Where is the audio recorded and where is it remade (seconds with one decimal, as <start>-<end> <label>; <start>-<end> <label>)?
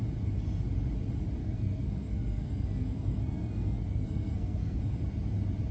0.0-1.4 recorded; 1.4-4.8 remade; 4.8-5.7 recorded